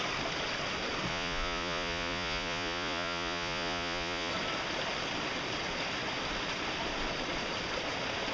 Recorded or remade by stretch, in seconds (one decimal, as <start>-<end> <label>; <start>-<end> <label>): 0.0-1.1 recorded; 1.1-4.3 remade; 4.3-8.3 recorded